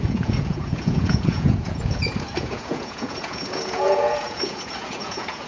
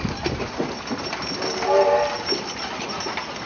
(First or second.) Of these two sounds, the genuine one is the second